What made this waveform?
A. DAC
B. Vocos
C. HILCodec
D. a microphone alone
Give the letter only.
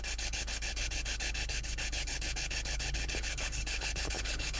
C